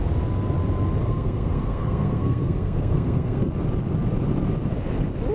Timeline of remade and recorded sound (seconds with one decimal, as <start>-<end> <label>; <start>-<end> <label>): 0.0-1.0 recorded; 1.0-3.5 remade; 3.5-5.3 recorded